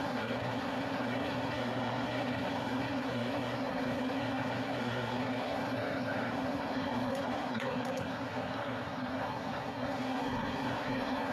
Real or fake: fake